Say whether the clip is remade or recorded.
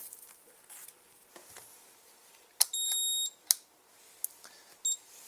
recorded